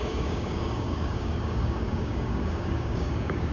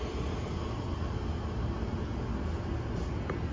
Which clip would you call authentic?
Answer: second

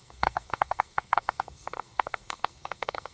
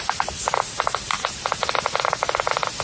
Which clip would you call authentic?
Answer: second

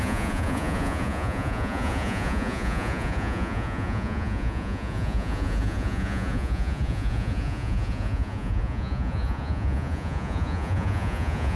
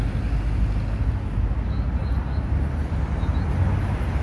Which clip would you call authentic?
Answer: second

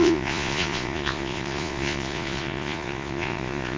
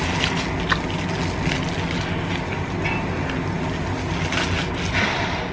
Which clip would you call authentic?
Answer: second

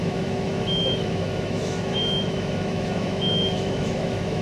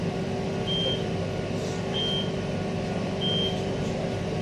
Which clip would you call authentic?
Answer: second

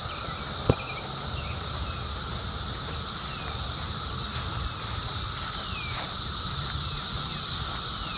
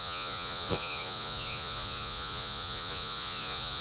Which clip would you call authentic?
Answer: first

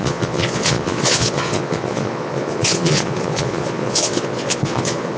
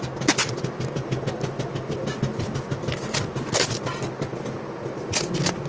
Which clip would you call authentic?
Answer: second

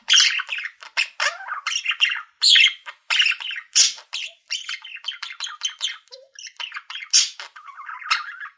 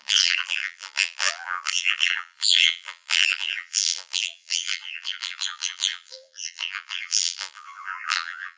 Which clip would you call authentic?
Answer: first